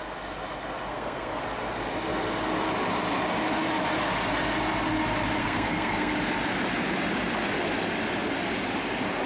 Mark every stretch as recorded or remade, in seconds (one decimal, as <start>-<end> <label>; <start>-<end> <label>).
0.0-0.9 recorded; 0.9-1.4 remade; 1.4-5.4 recorded; 5.4-6.1 remade; 6.1-9.3 recorded